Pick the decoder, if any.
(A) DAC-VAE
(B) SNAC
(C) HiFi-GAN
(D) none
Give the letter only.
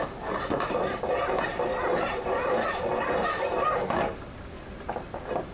D